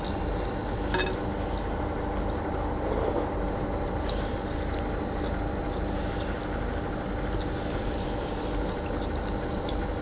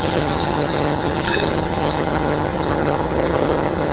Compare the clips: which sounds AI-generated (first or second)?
second